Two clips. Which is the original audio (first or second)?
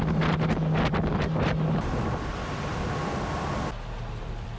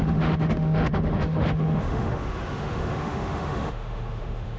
first